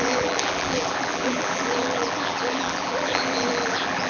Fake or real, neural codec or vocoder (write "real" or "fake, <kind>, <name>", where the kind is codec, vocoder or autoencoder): fake, vocoder, BigVGAN v2